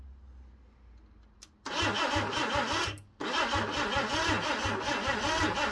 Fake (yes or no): no